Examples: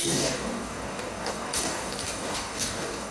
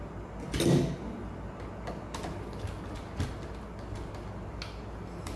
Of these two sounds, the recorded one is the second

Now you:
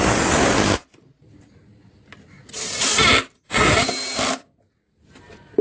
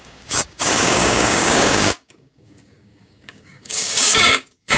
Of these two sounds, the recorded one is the first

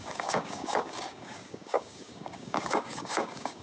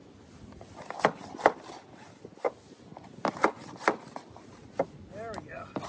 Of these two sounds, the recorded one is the second